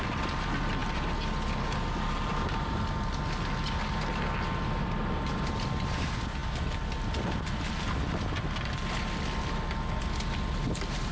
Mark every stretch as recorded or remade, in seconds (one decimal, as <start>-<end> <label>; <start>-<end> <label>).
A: 0.0-11.1 recorded